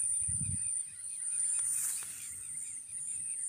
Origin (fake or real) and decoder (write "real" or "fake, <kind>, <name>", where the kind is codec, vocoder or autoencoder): fake, vocoder, BigVGAN v2